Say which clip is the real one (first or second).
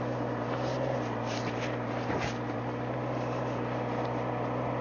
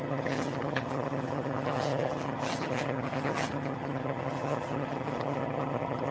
first